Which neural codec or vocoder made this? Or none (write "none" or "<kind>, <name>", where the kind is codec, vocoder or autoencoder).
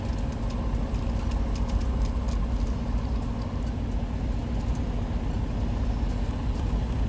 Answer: none